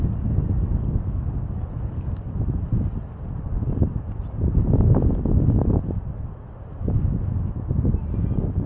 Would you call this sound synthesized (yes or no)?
no